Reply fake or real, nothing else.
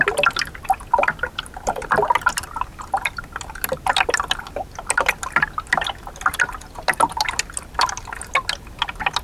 real